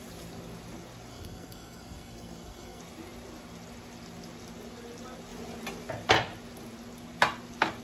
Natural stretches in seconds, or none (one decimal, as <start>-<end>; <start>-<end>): 0.0-1.1; 2.8-7.8